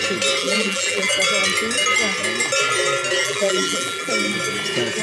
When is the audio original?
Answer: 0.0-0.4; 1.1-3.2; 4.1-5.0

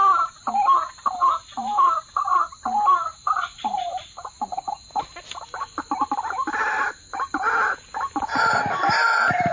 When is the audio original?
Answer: 0.0-1.6; 2.1-3.1; 4.7-9.5

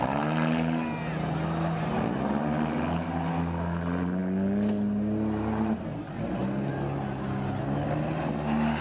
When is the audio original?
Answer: 0.0-8.8

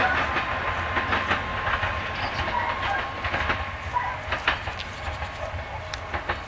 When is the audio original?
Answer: 0.0-6.5

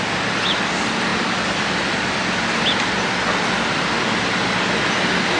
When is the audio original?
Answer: 0.0-5.4

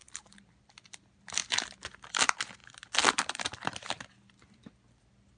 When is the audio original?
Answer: 0.7-2.6; 3.7-5.4